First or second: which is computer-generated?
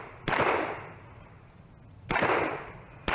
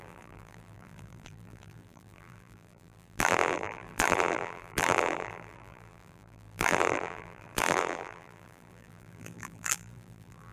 second